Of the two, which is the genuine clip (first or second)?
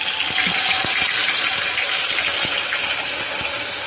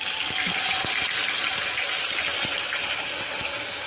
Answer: first